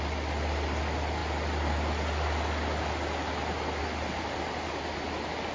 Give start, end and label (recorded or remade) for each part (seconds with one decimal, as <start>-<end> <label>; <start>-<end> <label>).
0.0-5.5 recorded